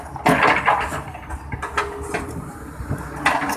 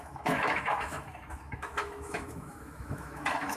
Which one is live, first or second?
first